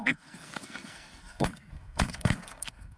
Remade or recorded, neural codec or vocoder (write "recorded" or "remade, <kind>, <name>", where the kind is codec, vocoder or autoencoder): remade, codec, SNAC